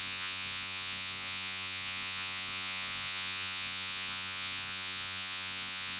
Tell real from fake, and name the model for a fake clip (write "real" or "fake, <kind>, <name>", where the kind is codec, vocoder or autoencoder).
fake, vocoder, Vocos